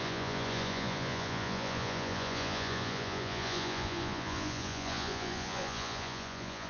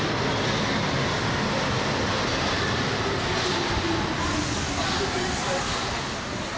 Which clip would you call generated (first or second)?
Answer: first